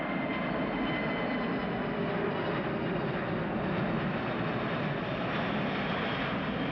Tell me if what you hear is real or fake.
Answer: real